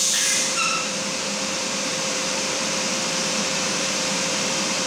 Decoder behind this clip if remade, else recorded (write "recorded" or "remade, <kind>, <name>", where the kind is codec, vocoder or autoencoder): remade, vocoder, BigVGAN v2